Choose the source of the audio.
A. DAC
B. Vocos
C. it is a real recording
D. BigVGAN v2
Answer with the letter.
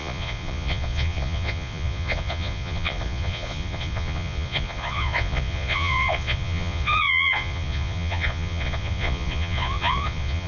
B